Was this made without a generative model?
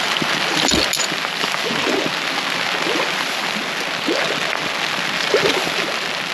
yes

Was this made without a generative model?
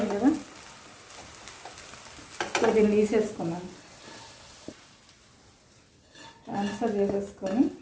yes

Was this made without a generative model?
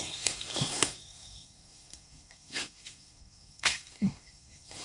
no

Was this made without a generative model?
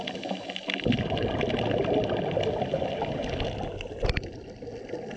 yes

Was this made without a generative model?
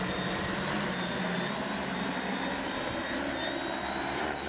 yes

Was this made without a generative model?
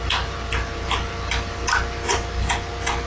yes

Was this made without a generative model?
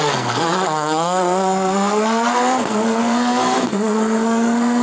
no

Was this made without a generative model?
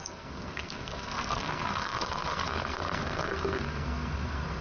no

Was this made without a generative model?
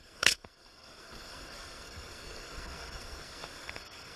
no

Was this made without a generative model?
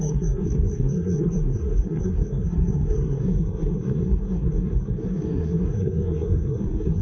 no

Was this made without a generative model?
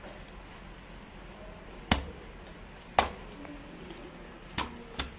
yes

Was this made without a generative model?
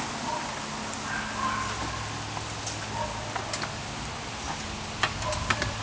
yes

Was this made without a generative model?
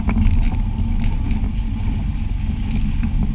yes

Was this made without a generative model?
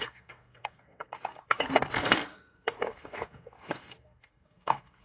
no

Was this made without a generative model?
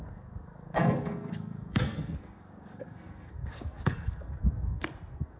no